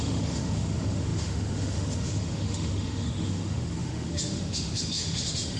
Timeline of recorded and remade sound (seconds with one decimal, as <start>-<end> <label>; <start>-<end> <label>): 0.0-5.6 remade